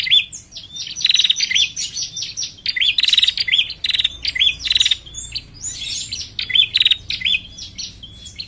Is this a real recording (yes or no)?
yes